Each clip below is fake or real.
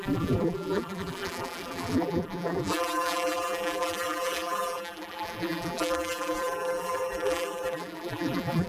fake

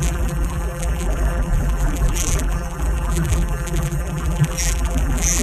fake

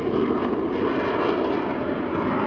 real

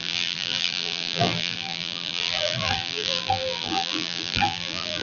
fake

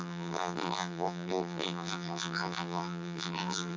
fake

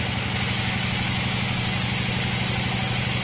real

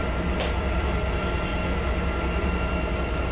real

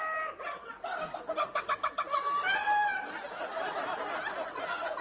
real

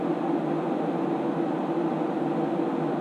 fake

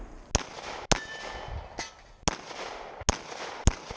real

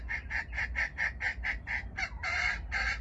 fake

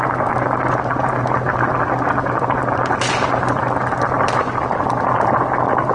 real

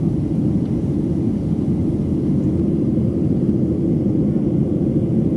real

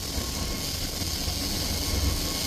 real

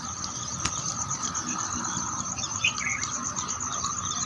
fake